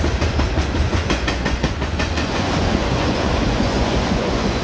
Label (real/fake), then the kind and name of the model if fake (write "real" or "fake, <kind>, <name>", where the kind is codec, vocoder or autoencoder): fake, vocoder, Vocos